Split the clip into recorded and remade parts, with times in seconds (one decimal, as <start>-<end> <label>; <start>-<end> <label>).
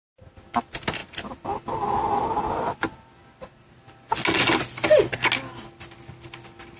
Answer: 0.0-6.8 recorded